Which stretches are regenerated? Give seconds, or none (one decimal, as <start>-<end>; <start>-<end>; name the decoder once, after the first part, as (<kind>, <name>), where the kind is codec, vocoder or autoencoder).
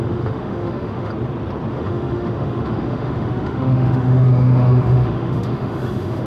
0.0-1.1 (autoencoder, DAC-VAE); 1.7-6.3